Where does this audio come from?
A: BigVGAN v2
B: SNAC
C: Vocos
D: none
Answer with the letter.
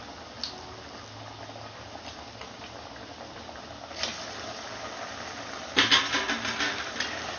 D